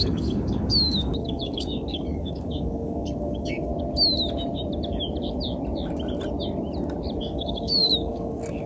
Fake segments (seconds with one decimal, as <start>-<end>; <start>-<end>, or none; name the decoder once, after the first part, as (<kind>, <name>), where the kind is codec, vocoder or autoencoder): 0.0-3.7 (codec, DAC); 7.2-8.7